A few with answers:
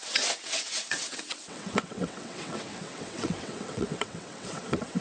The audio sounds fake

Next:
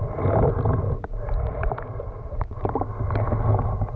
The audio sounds real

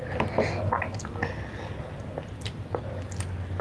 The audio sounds real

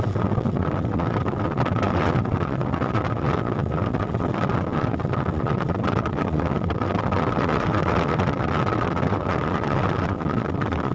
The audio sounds fake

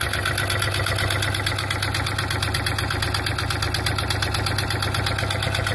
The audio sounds real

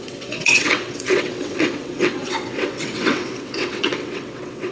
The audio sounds fake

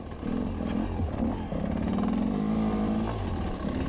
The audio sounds real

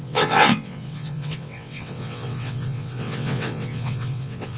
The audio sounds fake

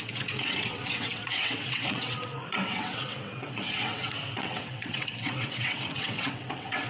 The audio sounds fake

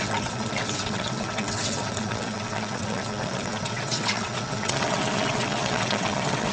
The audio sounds fake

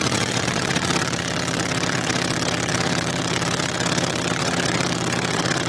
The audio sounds fake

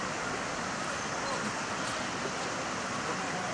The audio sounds real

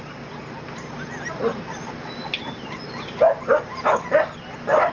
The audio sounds real